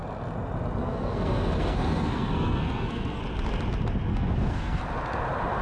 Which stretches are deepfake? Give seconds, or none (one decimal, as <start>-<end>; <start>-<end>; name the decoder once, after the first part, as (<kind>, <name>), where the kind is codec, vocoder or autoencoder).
0.8-3.2 (codec, SNAC); 4.1-4.8